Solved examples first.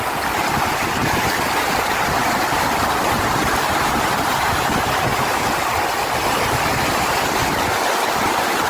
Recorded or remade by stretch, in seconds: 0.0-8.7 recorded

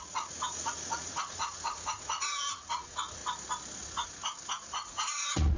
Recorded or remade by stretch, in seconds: 0.0-3.2 remade; 3.2-3.8 recorded; 3.8-4.2 remade; 4.2-4.7 recorded; 4.7-5.6 remade

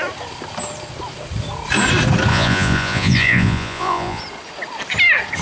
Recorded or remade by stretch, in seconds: 0.0-2.3 recorded; 2.3-4.2 remade; 4.2-5.4 recorded

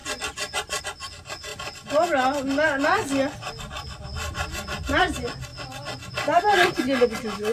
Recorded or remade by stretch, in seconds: 0.0-7.5 recorded

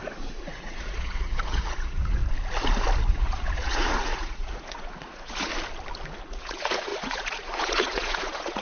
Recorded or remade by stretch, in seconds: 0.0-2.2 remade; 2.2-3.1 recorded; 3.1-5.5 remade; 5.5-6.2 recorded; 6.2-8.6 remade

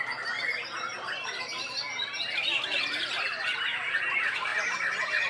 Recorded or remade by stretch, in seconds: 0.0-5.3 recorded

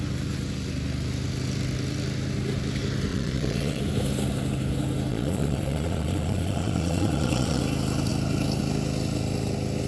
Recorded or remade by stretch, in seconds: 0.0-3.1 recorded; 3.1-3.8 remade; 3.8-5.1 recorded; 5.1-7.6 remade; 7.6-9.9 recorded